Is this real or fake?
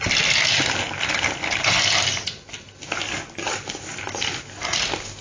real